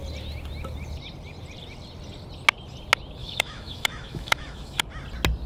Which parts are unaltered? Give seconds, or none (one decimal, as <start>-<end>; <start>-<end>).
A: 0.0-3.2; 4.8-5.5